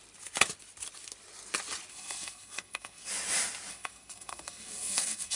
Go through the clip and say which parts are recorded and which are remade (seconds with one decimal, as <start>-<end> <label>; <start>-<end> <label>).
0.0-1.9 recorded; 1.9-3.1 remade; 3.1-3.7 recorded; 3.7-5.4 remade